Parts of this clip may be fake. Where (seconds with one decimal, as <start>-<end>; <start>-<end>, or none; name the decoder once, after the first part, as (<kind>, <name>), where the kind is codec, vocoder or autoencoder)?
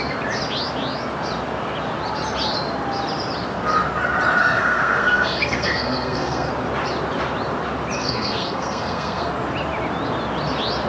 4.4-6.5 (codec, SNAC); 8.0-9.3